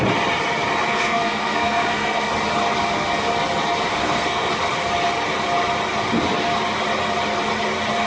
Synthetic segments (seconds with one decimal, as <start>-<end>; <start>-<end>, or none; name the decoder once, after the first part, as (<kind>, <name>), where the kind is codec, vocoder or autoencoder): 0.9-2.3 (codec, SNAC); 3.9-4.5